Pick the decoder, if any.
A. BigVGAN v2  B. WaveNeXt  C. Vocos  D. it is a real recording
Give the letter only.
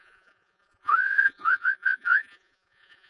C